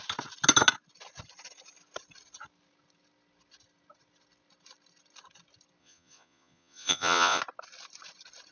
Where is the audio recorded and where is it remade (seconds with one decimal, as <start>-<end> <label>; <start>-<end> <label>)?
0.0-5.8 recorded; 5.8-7.4 remade; 7.4-8.5 recorded